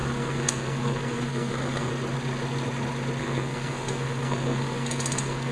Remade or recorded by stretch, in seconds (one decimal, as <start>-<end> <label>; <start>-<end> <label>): 0.0-1.9 remade; 1.9-3.2 recorded; 3.2-5.5 remade